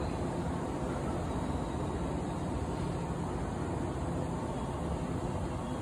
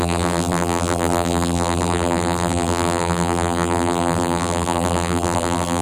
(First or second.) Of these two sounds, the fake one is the second